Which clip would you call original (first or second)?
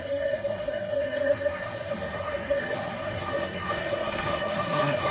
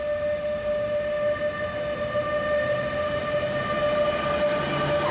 second